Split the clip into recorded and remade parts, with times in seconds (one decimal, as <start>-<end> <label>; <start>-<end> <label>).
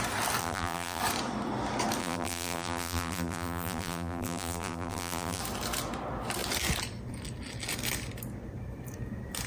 0.0-0.4 recorded; 0.4-1.0 remade; 1.0-2.0 recorded; 2.0-5.4 remade; 5.4-9.5 recorded